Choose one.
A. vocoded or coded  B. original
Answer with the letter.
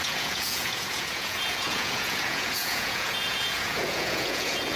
A